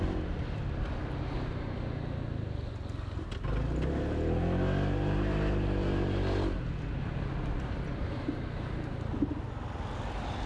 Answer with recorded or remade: recorded